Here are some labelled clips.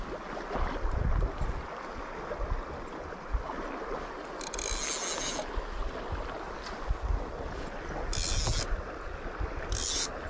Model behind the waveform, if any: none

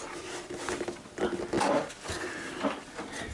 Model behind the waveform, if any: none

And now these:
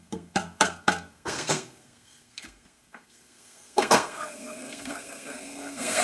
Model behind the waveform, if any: codec, SNAC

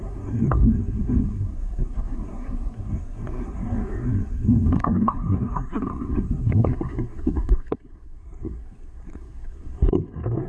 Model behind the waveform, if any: codec, SNAC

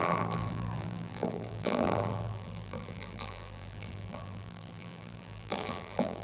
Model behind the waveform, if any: vocoder, BigVGAN v2